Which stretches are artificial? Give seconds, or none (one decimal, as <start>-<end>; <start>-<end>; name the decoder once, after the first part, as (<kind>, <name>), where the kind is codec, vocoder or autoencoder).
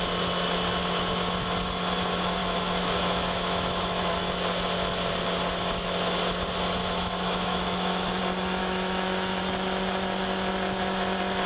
2.4-4.1 (autoencoder, DAC-VAE); 6.8-8.2; 8.6-9.4